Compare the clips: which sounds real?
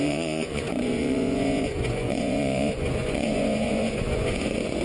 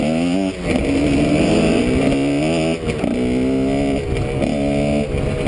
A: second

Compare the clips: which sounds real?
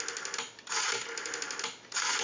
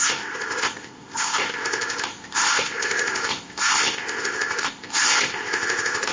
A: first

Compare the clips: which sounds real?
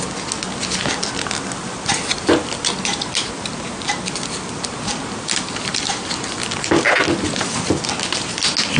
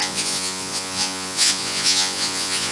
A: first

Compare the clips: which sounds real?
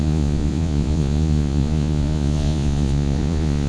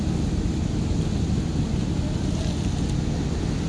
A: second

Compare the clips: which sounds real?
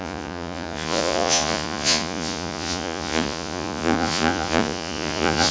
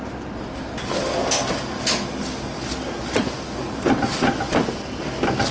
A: second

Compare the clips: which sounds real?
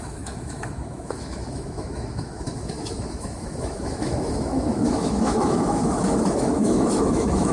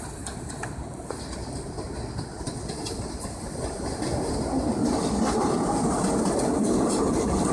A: second